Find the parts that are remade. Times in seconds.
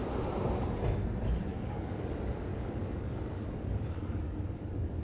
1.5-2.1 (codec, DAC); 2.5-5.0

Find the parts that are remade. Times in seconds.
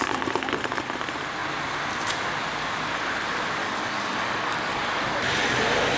3.6-4.8 (codec, DAC)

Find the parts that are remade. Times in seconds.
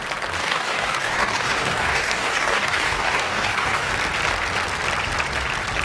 0.4-3.9 (codec, DAC)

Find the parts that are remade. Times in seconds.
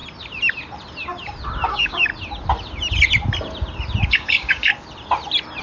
1.7-2.1 (codec, DAC); 4.1-4.7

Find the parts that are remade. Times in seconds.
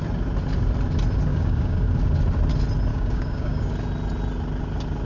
1.3-1.9 (codec, DAC); 2.9-3.7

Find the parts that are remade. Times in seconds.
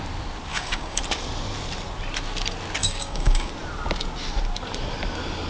0.5-1.0 (codec, DAC); 2.8-3.5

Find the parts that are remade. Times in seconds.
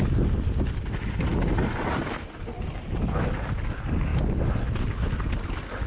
none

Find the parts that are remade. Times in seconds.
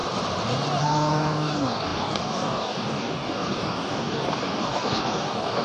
0.8-5.6 (codec, DAC)